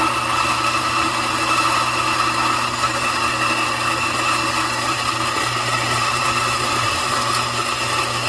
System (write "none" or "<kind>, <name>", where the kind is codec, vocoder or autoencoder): none